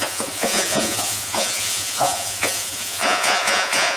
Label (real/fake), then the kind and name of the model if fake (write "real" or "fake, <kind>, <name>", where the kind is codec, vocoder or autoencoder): fake, vocoder, Vocos